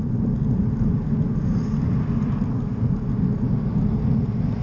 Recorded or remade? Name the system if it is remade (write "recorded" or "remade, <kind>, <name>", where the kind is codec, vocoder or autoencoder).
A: recorded